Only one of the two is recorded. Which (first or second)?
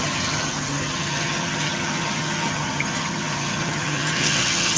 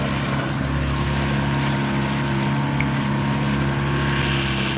second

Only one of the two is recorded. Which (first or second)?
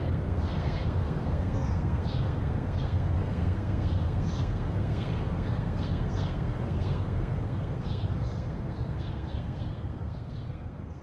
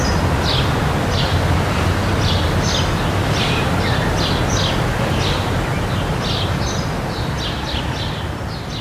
second